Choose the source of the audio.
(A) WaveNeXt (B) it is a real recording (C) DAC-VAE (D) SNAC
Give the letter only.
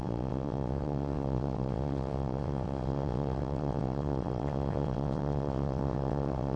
A